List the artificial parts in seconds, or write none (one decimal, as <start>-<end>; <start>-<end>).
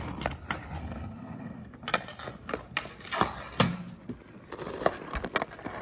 0.8-1.7